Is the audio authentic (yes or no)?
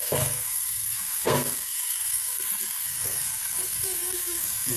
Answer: no